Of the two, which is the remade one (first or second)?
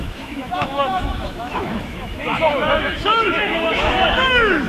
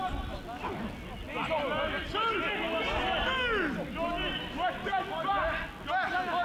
first